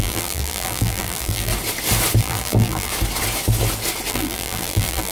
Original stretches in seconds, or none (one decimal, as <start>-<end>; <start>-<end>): 1.5-2.2; 2.9-4.1